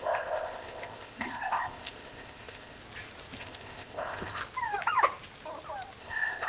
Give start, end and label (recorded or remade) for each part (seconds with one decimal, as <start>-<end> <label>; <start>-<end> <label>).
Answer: 0.0-2.8 remade; 2.8-3.4 recorded; 3.4-4.4 remade; 4.4-6.0 recorded; 6.0-6.5 remade